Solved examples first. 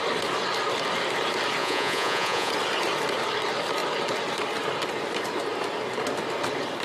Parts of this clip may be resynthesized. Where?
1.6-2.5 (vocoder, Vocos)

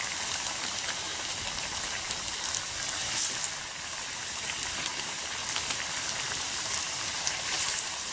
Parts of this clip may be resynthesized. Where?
0.0-1.1 (vocoder, BigVGAN v2); 4.2-5.4; 6.3-8.1

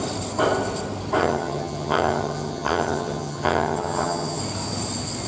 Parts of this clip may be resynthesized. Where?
1.2-4.4 (vocoder, HiFi-GAN)

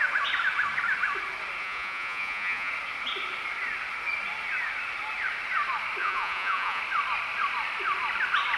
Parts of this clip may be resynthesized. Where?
1.6-2.7 (vocoder, Vocos); 6.0-6.8

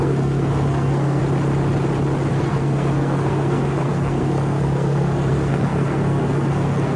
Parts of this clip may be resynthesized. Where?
0.0-1.2 (codec, SNAC); 2.3-7.0

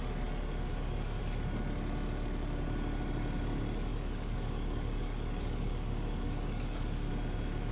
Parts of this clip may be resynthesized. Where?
0.7-1.2 (codec, DAC); 3.9-7.1